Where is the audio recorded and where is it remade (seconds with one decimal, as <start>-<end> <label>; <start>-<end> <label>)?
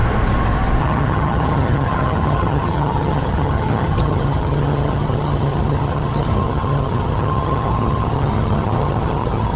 0.0-0.8 recorded; 0.8-9.6 remade